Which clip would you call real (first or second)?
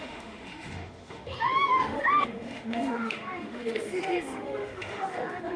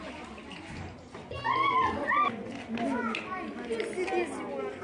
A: second